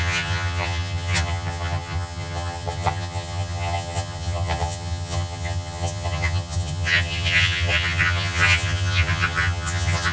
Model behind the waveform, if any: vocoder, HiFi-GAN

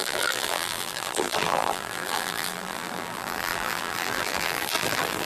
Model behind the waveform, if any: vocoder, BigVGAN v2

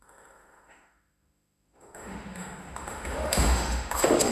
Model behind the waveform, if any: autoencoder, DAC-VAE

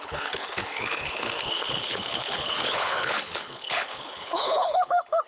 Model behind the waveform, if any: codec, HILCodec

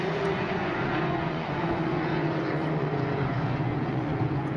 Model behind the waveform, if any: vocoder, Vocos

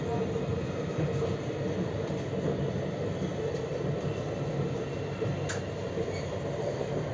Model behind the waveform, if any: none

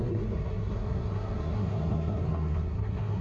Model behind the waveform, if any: codec, SNAC